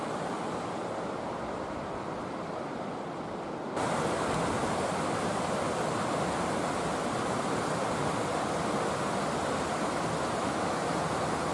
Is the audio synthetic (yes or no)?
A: no